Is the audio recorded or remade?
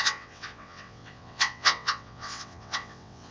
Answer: remade